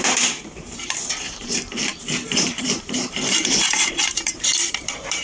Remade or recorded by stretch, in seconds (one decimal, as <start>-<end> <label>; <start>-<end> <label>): 0.0-5.2 remade

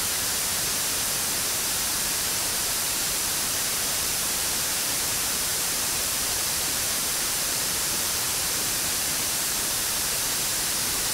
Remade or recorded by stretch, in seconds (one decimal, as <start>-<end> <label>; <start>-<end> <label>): 0.0-0.5 remade; 0.5-1.9 recorded; 1.9-11.1 remade

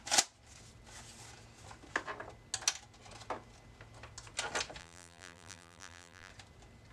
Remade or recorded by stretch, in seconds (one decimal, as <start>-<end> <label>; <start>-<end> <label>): 0.0-4.8 recorded; 4.8-6.3 remade; 6.3-6.9 recorded

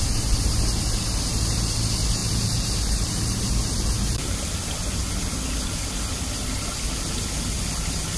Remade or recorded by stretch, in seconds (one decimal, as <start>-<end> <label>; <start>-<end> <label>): 0.0-2.2 recorded; 2.2-5.0 remade; 5.0-8.2 recorded

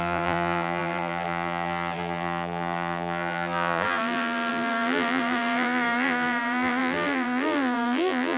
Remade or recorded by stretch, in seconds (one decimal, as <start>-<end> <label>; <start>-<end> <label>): 0.0-8.4 remade

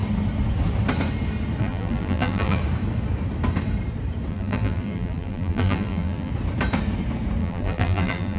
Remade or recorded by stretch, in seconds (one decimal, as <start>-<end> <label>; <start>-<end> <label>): 0.0-1.6 recorded; 1.6-2.6 remade; 2.6-4.3 recorded; 4.3-6.3 remade; 6.3-7.4 recorded; 7.4-8.4 remade

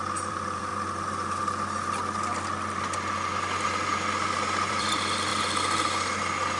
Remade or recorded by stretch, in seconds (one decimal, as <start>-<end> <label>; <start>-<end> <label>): 0.0-0.7 remade; 0.7-4.7 recorded; 4.7-5.3 remade; 5.3-6.6 recorded

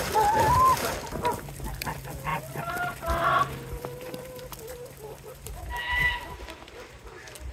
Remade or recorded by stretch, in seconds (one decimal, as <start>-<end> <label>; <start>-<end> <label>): 0.0-2.3 recorded; 2.3-6.8 remade; 6.8-7.5 recorded